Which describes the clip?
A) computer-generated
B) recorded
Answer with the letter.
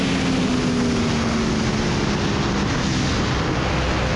B